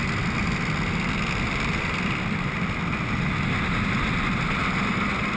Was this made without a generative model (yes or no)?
yes